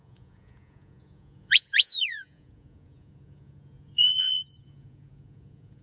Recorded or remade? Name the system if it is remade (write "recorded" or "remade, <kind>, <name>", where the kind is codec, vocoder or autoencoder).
remade, vocoder, Vocos